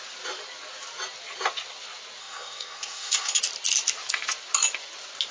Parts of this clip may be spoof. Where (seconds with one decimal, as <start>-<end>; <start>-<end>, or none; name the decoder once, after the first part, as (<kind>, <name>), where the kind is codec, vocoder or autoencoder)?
2.2-3.4 (codec, SNAC)